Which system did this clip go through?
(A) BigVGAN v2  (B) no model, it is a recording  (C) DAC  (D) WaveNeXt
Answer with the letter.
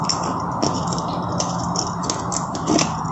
B